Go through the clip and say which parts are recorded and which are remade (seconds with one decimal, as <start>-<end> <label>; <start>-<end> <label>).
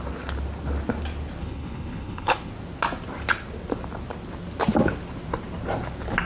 0.0-1.4 recorded; 1.4-2.5 remade; 2.5-6.3 recorded